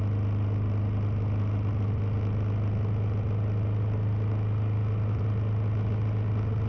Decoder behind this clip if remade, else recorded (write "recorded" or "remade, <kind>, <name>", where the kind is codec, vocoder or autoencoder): recorded